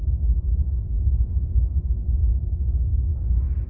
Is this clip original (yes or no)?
no